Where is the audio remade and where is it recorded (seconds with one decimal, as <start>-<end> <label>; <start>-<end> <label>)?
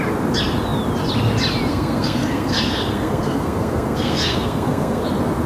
0.0-1.7 recorded; 1.7-5.0 remade; 5.0-5.5 recorded